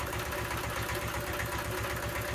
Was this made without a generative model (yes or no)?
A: yes